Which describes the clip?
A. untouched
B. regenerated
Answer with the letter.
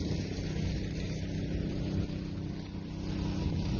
A